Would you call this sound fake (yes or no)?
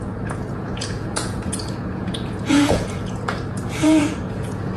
yes